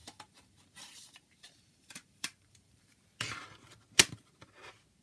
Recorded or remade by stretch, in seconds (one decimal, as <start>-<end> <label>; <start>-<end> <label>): 0.0-3.0 remade; 3.0-5.0 recorded